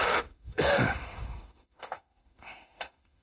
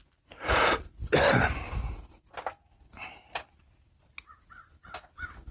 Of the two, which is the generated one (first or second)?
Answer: first